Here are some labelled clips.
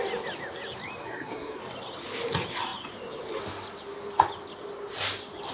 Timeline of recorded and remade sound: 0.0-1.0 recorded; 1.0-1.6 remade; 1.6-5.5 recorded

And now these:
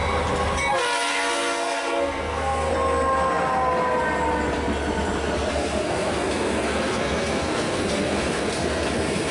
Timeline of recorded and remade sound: 0.0-1.1 recorded; 1.1-2.7 remade; 2.7-5.5 recorded; 5.5-9.3 remade

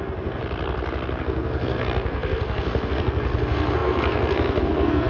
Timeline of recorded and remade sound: 0.0-0.4 remade; 0.4-1.2 recorded; 1.2-5.1 remade

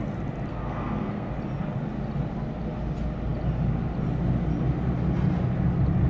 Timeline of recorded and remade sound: 0.0-0.5 recorded; 0.5-1.3 remade; 1.3-6.1 recorded

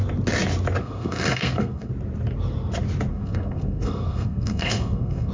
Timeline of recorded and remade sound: 0.0-0.8 recorded; 0.8-1.9 remade; 1.9-3.1 recorded; 3.1-5.3 remade

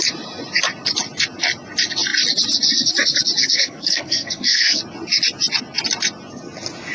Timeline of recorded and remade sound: 0.0-3.4 recorded; 3.4-4.8 remade; 4.8-6.9 recorded